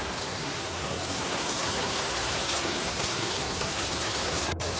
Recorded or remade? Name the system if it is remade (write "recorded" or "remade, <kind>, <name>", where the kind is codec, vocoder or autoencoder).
remade, codec, SNAC